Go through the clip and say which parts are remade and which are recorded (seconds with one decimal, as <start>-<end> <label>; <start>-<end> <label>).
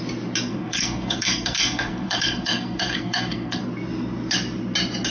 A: 0.0-0.5 recorded; 0.5-3.6 remade; 3.6-5.1 recorded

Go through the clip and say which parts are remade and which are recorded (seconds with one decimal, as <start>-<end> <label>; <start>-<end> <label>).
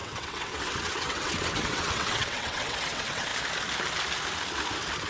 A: 0.0-3.3 remade; 3.3-5.1 recorded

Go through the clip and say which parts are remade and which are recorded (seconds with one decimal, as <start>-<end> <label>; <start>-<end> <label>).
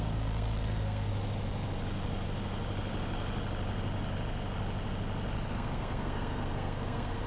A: 0.0-1.1 remade; 1.1-5.5 recorded; 5.5-7.3 remade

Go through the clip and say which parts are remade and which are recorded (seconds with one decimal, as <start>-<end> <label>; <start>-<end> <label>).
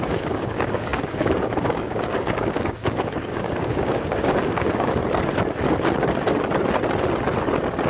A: 0.0-5.0 remade; 5.0-7.9 recorded